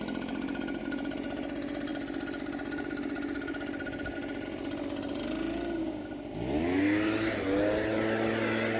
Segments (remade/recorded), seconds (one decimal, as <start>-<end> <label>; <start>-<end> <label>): 0.0-8.8 recorded